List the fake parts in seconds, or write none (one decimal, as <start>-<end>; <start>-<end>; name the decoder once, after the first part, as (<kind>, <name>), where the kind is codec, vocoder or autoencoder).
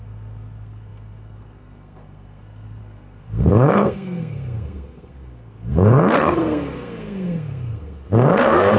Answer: 0.0-8.8 (codec, SNAC)